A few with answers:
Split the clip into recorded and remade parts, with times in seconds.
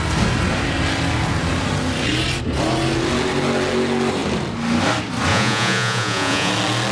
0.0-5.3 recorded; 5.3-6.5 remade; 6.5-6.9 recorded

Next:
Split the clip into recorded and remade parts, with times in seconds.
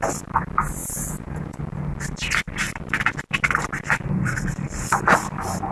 0.0-0.8 recorded; 0.8-1.6 remade; 1.6-5.7 recorded